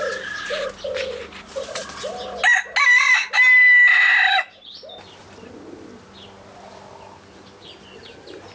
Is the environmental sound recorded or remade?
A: recorded